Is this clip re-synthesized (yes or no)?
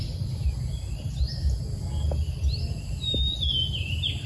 no